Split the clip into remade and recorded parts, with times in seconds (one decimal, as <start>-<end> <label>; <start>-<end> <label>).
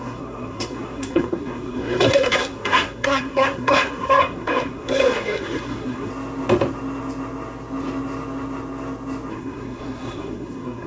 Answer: 0.0-6.1 remade; 6.1-9.3 recorded; 9.3-10.9 remade